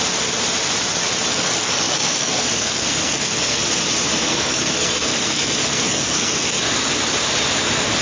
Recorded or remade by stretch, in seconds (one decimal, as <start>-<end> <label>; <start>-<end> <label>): 0.0-1.3 recorded; 1.3-3.6 remade; 3.6-4.3 recorded; 4.3-6.6 remade; 6.6-8.0 recorded